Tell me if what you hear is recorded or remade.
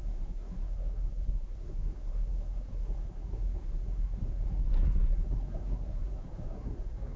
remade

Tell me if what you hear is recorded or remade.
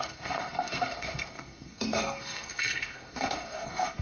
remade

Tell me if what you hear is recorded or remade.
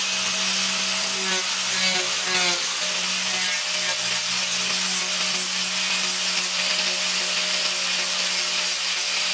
recorded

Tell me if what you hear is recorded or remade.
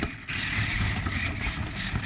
recorded